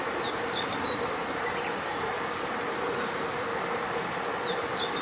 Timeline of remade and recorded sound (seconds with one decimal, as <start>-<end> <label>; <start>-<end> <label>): 0.0-2.1 remade; 2.1-5.0 recorded